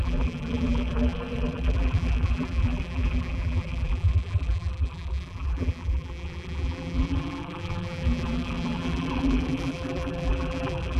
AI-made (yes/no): yes